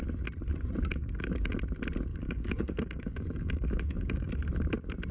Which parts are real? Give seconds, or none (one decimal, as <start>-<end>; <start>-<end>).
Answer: 0.0-0.9; 1.5-2.1; 4.3-5.1